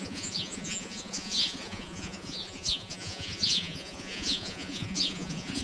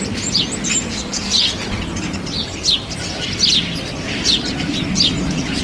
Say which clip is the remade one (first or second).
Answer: first